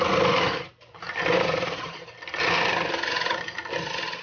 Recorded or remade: recorded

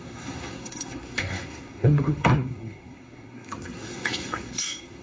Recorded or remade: remade